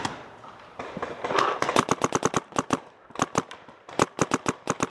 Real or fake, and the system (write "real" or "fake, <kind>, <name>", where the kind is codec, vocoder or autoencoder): fake, vocoder, BigVGAN v2